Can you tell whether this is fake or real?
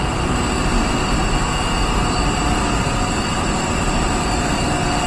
fake